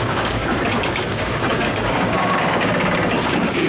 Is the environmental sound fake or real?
fake